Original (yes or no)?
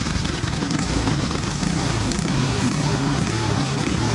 no